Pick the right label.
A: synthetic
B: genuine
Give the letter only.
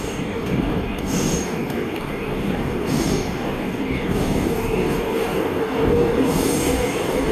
A